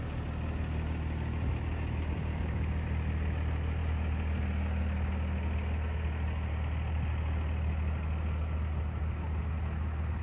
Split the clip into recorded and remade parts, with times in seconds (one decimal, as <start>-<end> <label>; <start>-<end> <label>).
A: 0.0-10.2 recorded